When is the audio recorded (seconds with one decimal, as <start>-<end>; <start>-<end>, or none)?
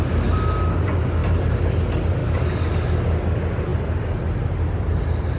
0.0-2.2; 2.7-5.4